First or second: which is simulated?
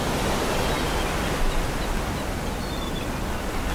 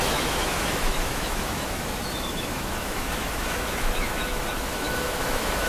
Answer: second